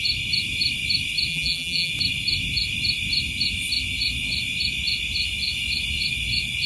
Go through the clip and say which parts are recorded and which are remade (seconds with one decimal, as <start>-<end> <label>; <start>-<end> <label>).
0.0-1.3 recorded; 1.3-1.9 remade; 1.9-6.7 recorded